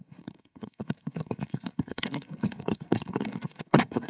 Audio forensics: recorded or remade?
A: remade